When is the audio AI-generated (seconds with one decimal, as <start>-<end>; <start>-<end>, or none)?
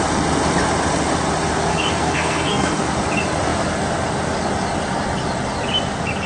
1.7-2.8